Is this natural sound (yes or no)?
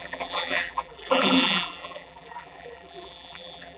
no